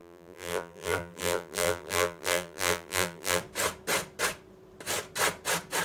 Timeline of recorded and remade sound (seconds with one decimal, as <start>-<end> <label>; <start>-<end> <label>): 0.0-3.4 remade; 3.4-5.8 recorded